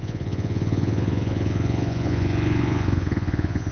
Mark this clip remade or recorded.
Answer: remade